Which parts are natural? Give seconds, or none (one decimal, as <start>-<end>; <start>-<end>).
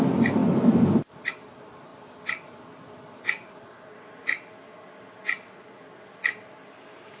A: 0.0-7.2